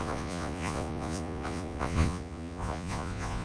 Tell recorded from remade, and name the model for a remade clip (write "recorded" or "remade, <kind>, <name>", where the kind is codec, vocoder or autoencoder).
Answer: remade, vocoder, Vocos